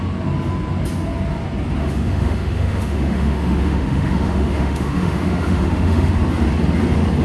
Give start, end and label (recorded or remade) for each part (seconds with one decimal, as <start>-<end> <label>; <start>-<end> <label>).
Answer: 0.0-1.8 recorded; 1.8-6.1 remade; 6.1-7.2 recorded

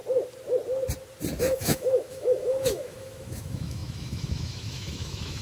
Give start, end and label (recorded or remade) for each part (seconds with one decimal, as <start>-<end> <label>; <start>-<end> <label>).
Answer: 0.0-1.4 recorded; 1.4-5.4 remade

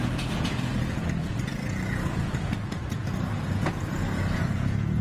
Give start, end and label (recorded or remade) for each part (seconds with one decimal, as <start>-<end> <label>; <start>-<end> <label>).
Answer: 0.0-5.0 remade

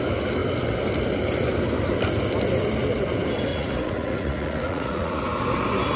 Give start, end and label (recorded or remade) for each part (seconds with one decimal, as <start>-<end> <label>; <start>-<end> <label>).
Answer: 0.0-3.5 recorded; 3.5-5.2 remade; 5.2-6.0 recorded

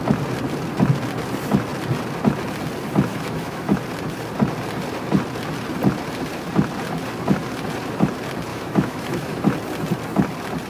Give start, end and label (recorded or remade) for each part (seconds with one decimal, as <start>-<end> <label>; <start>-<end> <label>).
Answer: 0.0-3.1 recorded; 3.1-3.8 remade; 3.8-8.5 recorded; 8.5-9.4 remade; 9.4-10.7 recorded

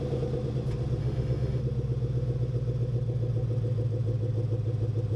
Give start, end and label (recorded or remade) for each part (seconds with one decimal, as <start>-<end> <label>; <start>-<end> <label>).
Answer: 0.0-1.0 recorded; 1.0-1.6 remade; 1.6-5.2 recorded

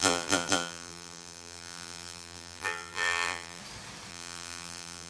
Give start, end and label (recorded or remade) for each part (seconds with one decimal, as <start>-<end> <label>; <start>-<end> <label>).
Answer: 0.0-3.6 remade; 3.6-4.1 recorded; 4.1-5.1 remade

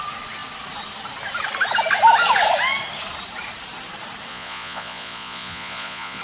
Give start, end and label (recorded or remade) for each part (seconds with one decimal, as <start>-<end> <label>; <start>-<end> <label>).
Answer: 0.0-4.3 recorded; 4.3-6.2 remade